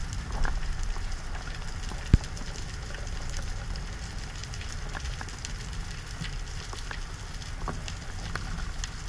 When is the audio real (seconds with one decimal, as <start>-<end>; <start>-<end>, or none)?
0.0-9.1